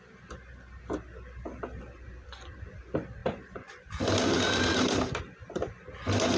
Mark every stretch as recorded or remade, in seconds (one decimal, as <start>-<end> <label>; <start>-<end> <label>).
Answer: 0.0-6.4 recorded